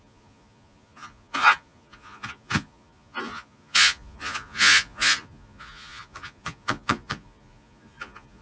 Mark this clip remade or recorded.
remade